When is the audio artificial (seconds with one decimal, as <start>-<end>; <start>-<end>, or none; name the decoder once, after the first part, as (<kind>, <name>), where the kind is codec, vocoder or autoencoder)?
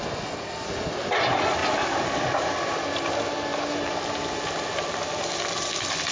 none